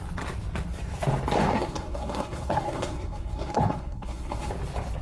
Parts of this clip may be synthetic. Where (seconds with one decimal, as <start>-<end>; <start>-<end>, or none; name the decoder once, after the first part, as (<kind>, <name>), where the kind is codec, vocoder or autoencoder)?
1.5-4.5 (codec, SNAC)